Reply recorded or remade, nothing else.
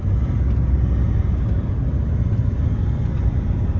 recorded